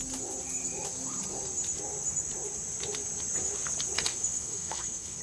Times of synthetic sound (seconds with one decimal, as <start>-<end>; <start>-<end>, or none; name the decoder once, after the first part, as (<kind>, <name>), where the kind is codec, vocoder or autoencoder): 4.1-5.2 (autoencoder, DAC-VAE)